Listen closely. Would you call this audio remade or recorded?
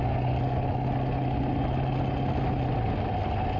recorded